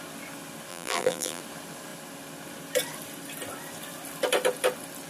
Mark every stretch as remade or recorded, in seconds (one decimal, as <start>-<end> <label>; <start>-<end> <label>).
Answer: 0.0-0.7 recorded; 0.7-1.4 remade; 1.4-5.1 recorded